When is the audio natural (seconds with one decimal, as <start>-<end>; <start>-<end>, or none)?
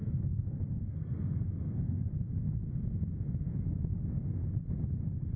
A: 2.1-5.4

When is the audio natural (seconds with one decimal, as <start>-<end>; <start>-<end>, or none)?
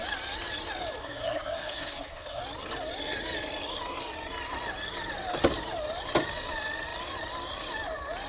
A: 0.0-1.0; 2.4-8.3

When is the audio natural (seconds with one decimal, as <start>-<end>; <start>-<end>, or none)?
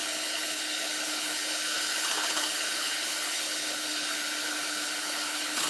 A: none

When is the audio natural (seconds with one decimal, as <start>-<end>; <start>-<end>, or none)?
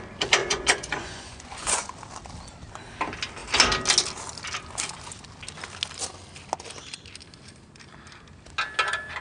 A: 0.0-0.4; 1.9-9.2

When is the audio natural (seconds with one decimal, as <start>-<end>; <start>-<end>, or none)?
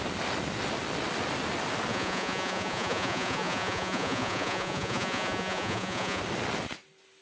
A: 0.0-1.9; 6.2-7.2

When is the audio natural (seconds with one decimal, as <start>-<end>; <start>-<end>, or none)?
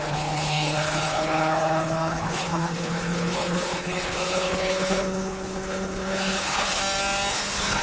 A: 6.8-7.3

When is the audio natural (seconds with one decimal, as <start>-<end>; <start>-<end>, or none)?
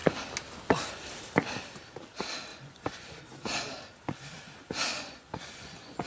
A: 0.0-2.5; 3.2-4.9